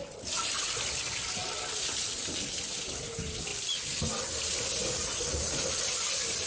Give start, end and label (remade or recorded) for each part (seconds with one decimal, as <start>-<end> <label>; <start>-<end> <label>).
0.0-6.5 recorded